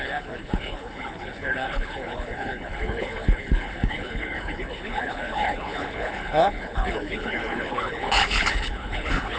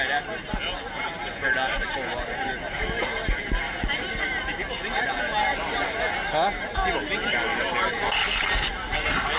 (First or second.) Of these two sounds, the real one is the second